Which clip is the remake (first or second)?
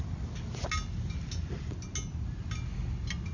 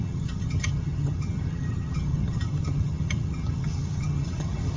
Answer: second